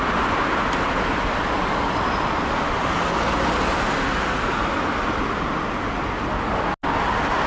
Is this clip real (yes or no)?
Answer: yes